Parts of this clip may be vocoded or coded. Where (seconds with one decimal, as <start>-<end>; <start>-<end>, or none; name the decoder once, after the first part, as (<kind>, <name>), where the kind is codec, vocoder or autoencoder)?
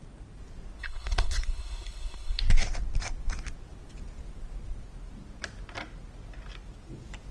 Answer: 0.8-2.4 (codec, HILCodec)